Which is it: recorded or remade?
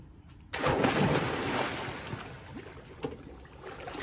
recorded